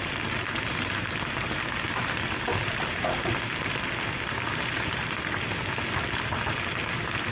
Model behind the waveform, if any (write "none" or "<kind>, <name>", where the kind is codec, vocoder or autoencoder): none